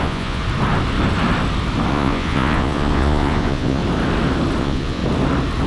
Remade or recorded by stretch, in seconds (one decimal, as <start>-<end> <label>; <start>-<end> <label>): 0.0-0.4 remade; 0.4-1.9 recorded; 1.9-3.8 remade; 3.8-4.6 recorded; 4.6-5.0 remade; 5.0-5.7 recorded

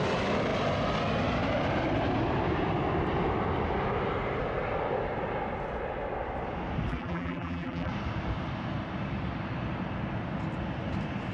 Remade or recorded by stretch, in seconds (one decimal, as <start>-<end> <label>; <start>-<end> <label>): 0.0-6.9 recorded; 6.9-7.9 remade; 7.9-11.3 recorded